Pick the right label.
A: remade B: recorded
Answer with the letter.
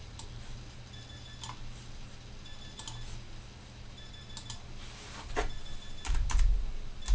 B